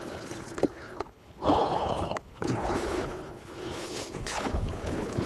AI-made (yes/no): yes